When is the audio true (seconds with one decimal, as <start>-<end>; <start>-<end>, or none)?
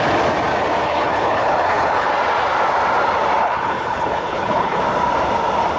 0.0-0.8; 2.1-3.4; 4.8-5.8